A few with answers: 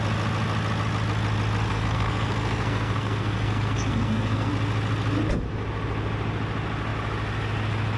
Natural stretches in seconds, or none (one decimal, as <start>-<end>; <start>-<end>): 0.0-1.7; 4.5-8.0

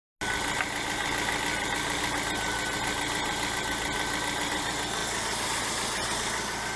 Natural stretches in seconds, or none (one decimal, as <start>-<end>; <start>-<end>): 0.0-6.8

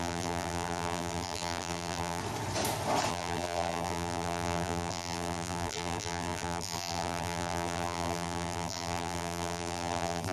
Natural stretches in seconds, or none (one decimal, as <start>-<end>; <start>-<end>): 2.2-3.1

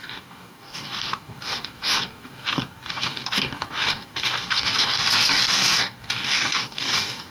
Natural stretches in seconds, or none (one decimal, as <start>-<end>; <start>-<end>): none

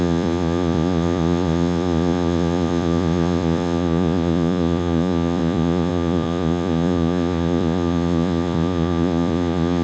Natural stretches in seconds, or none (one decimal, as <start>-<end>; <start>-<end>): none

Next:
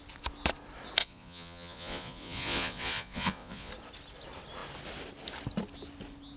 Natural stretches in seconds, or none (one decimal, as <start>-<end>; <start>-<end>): 0.0-1.0; 3.7-6.4

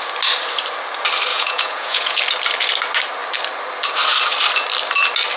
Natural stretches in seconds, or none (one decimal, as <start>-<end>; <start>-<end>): 0.0-1.3; 2.2-5.4

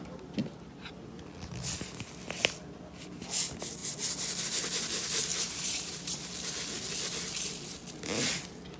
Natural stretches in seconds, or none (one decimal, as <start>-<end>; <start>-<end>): 0.0-0.4; 0.9-5.3; 6.3-8.8